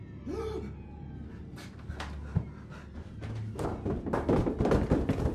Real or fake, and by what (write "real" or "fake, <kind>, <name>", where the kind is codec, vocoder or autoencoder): real